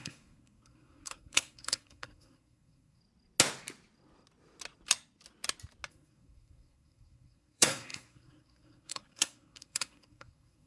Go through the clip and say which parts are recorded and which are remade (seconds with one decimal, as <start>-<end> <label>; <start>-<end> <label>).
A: 0.0-3.0 remade; 3.0-5.9 recorded; 5.9-10.7 remade